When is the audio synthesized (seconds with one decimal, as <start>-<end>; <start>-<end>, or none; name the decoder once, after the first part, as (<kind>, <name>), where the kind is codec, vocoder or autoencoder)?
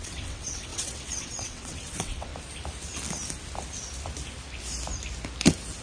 0.0-2.3 (vocoder, WaveNeXt)